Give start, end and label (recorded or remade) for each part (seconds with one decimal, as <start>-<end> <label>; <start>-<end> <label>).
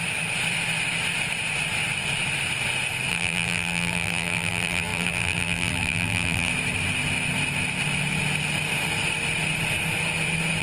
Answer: 0.0-3.1 recorded; 3.1-6.5 remade; 6.5-10.6 recorded